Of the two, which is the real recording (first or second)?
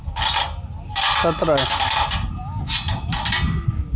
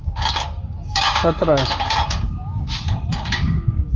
first